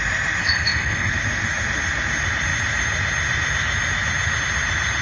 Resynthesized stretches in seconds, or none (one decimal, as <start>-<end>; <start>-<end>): 0.4-1.1